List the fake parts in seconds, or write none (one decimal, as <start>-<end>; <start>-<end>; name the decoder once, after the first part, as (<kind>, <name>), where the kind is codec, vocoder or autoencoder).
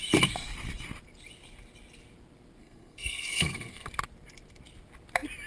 2.6-3.9 (codec, SNAC)